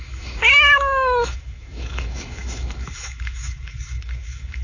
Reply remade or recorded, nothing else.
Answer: remade